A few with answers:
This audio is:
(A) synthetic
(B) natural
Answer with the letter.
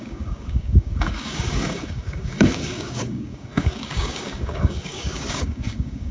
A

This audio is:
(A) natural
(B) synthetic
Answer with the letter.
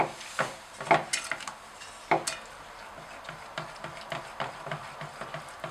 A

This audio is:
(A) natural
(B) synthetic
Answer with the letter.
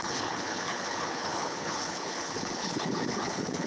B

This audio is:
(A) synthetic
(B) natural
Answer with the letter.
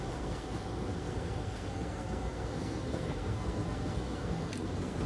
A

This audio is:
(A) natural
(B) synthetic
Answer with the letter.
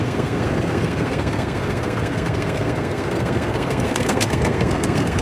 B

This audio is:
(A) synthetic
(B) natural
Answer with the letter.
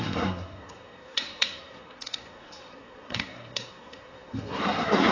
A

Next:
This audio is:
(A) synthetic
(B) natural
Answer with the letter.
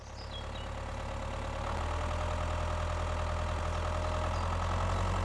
B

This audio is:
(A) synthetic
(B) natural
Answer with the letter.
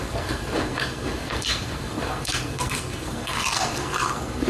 A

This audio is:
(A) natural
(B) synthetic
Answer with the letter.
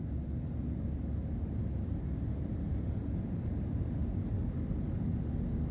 A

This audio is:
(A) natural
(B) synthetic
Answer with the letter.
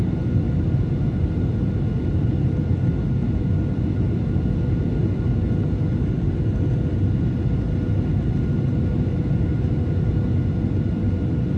A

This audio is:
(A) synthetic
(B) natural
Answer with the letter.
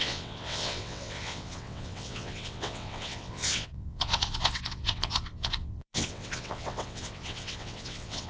A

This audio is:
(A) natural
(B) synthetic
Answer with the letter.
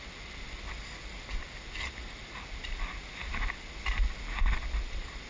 A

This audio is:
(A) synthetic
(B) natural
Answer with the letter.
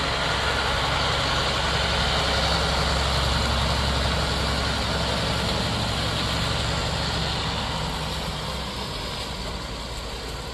B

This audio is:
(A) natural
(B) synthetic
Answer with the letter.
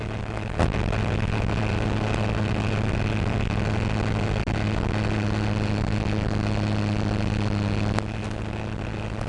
A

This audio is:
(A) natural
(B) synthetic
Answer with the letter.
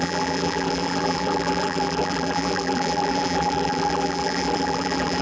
B